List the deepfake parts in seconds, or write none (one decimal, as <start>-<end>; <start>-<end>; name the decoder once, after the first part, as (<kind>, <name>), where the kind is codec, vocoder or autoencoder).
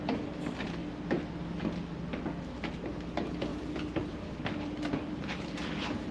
3.5-5.4 (vocoder, BigVGAN v2)